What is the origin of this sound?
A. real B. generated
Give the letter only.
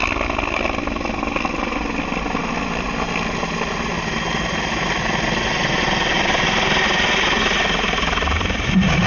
A